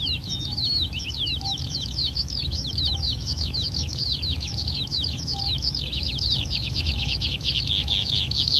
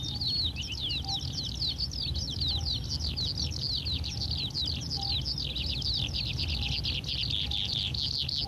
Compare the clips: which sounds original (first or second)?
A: second